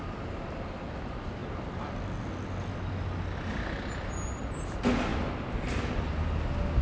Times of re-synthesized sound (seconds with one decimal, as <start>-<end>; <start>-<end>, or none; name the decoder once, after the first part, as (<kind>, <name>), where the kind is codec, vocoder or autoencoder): none